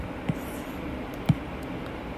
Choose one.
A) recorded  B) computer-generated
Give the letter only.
A